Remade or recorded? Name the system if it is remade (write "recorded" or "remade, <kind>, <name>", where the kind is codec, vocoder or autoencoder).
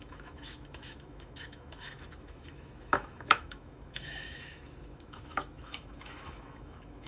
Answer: remade, autoencoder, DAC-VAE